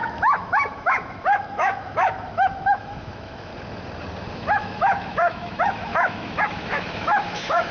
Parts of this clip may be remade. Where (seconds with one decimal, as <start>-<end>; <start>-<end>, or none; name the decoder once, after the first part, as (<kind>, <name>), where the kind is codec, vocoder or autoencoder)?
0.0-3.5 (autoencoder, DAC-VAE); 4.3-7.7